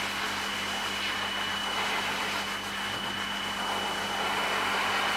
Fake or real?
real